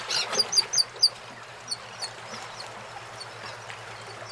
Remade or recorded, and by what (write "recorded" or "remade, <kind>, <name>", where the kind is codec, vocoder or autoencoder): recorded